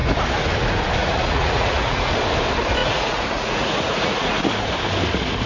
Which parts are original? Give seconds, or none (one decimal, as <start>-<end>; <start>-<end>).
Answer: 0.0-1.0; 2.1-2.8; 4.5-5.5